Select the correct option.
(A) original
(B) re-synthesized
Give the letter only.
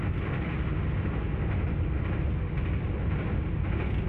A